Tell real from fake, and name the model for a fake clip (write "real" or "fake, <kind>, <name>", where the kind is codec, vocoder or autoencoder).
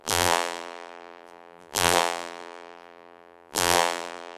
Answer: fake, vocoder, BigVGAN v2